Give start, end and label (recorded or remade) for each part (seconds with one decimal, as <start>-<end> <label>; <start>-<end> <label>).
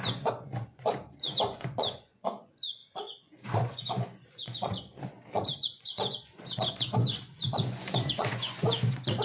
0.0-9.2 remade